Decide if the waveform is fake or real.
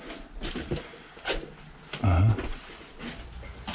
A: real